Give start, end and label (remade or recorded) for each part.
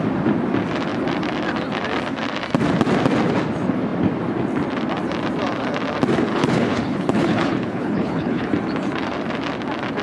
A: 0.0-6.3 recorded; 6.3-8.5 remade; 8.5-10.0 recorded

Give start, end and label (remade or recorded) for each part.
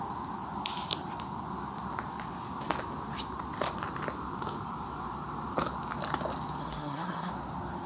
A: 0.0-6.6 recorded; 6.6-7.3 remade; 7.3-7.9 recorded